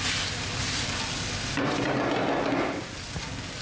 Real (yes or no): yes